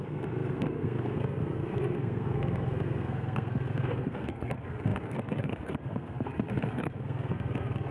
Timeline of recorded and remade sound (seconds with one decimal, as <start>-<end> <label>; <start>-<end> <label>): 0.0-7.9 remade